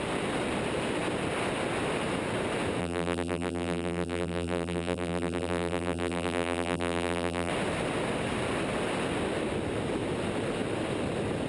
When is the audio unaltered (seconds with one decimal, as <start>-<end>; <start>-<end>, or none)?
0.0-2.8; 7.5-11.5